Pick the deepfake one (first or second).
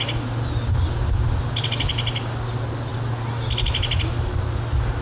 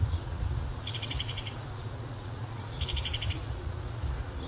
second